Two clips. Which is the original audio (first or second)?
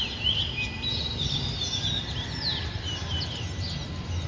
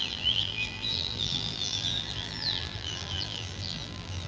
first